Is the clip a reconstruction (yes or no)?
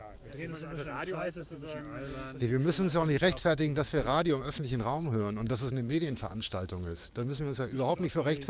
yes